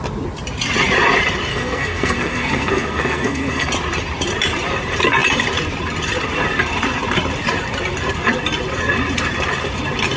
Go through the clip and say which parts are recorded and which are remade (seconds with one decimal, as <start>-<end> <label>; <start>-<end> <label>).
0.0-1.5 recorded; 1.5-3.7 remade; 3.7-10.2 recorded